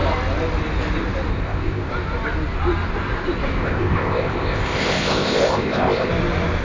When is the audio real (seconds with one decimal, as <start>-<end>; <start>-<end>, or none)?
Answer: 0.0-1.3; 1.9-3.6; 6.1-6.6